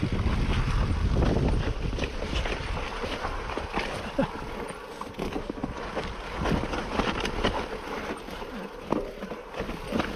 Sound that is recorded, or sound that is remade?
recorded